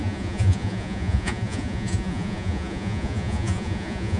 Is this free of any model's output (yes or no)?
no